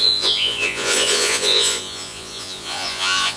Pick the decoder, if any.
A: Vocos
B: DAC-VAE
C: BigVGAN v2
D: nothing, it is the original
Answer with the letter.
A